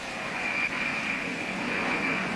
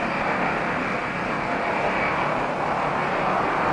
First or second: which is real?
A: second